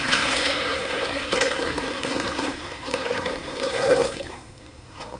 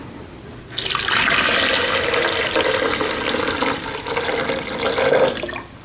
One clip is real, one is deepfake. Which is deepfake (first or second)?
first